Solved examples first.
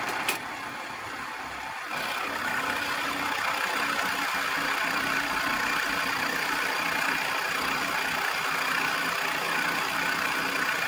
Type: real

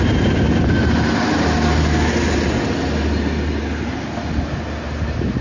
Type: real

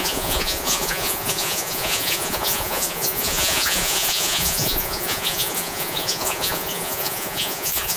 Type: fake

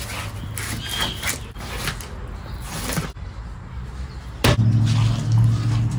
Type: real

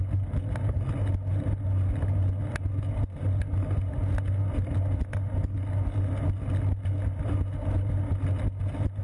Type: real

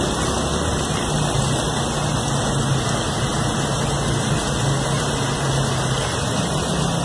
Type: real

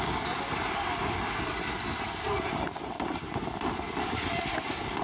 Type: real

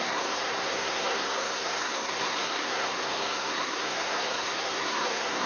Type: fake